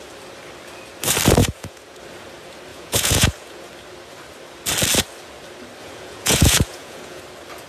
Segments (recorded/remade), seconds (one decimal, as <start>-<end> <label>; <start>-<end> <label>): 0.0-1.4 recorded; 1.4-2.0 remade; 2.0-2.7 recorded; 2.7-3.7 remade; 3.7-5.8 recorded; 5.8-7.2 remade; 7.2-7.7 recorded

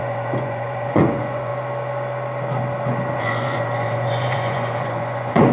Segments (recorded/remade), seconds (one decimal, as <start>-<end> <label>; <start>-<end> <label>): 0.0-1.5 remade; 1.5-3.2 recorded; 3.2-5.5 remade

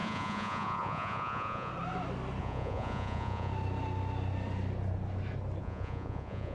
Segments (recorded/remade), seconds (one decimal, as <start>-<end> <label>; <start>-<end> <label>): 0.0-1.7 remade; 1.7-2.4 recorded; 2.4-3.5 remade; 3.5-5.6 recorded; 5.6-6.5 remade

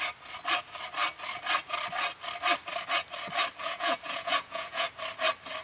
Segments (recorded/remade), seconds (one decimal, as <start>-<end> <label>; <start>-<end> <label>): 0.0-3.6 recorded; 3.6-4.9 remade; 4.9-5.6 recorded

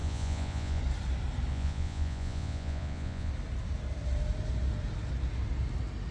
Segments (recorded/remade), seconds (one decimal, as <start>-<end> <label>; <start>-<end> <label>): 0.0-0.8 remade; 0.8-1.5 recorded; 1.5-3.3 remade; 3.3-6.1 recorded

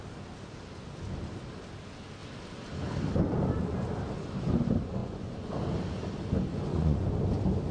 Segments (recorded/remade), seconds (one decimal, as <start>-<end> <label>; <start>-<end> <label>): 0.0-5.0 recorded; 5.0-5.5 remade; 5.5-6.5 recorded; 6.5-7.1 remade; 7.1-7.7 recorded

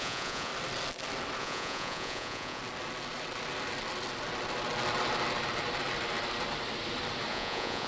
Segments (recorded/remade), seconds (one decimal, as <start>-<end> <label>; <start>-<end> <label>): 0.0-0.5 remade; 0.5-1.4 recorded; 1.4-2.6 remade; 2.6-7.3 recorded; 7.3-7.9 remade